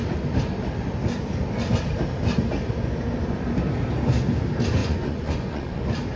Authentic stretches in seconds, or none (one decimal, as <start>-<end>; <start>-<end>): 0.0-4.8; 5.8-6.2